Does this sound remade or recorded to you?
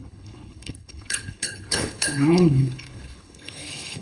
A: remade